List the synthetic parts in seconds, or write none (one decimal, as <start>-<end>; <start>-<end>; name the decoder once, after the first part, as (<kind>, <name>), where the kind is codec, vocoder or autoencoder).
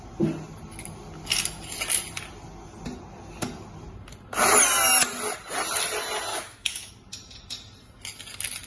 6.3-6.9 (autoencoder, DAC-VAE)